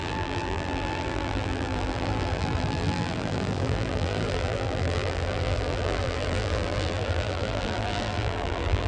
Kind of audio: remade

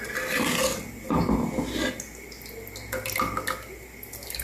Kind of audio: recorded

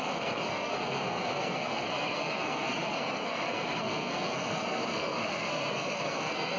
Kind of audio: remade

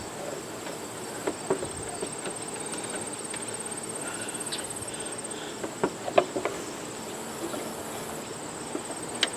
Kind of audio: recorded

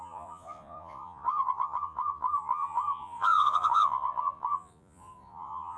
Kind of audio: remade